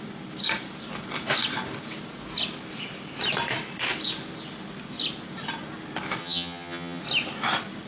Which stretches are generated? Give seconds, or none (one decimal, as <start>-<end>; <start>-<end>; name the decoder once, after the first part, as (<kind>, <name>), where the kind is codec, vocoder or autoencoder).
6.2-7.0 (vocoder, HiFi-GAN)